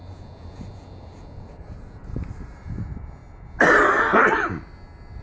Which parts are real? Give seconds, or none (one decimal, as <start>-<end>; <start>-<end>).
3.2-5.2